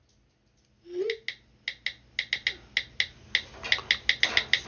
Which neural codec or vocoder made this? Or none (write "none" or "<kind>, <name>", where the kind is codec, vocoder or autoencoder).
none